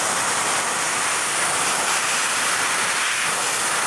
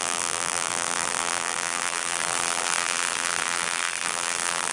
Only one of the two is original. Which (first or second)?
first